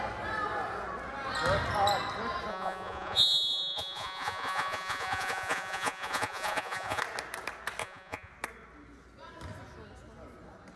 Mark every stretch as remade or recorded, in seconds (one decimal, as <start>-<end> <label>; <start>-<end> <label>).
0.0-2.5 recorded; 2.5-7.0 remade; 7.0-7.8 recorded; 7.8-8.3 remade; 8.3-10.8 recorded